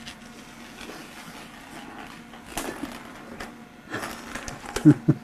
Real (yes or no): yes